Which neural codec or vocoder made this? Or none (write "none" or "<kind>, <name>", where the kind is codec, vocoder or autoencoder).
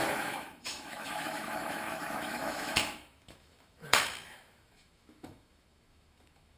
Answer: autoencoder, DAC-VAE